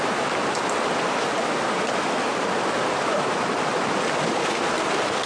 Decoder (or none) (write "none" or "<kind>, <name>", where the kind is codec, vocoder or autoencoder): none